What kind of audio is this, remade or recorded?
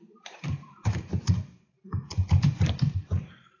remade